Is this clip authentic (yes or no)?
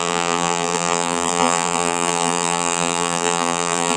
no